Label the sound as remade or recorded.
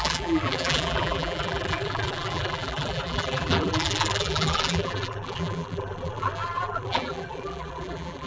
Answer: remade